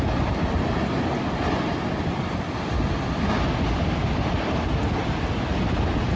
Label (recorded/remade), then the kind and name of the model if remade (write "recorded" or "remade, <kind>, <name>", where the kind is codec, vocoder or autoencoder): recorded